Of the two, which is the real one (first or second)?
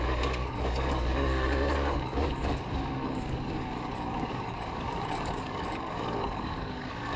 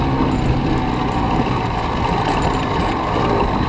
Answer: second